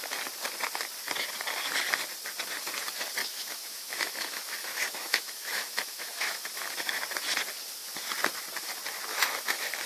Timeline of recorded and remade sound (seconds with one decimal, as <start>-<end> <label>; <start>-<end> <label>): 0.0-3.2 recorded; 3.2-7.0 remade; 7.0-9.1 recorded; 9.1-9.9 remade